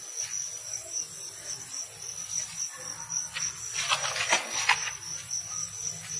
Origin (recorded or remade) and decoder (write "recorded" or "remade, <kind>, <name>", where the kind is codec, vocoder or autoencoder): recorded